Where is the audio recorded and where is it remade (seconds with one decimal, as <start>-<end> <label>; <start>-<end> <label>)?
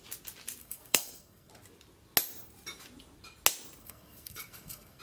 0.0-0.6 recorded; 0.6-1.5 remade; 1.5-3.8 recorded; 3.8-5.0 remade